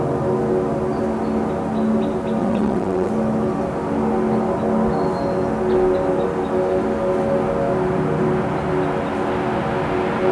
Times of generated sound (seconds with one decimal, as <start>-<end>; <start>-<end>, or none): 2.4-3.1